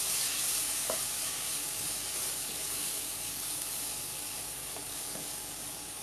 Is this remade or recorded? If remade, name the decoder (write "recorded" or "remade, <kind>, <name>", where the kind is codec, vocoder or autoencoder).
remade, codec, DAC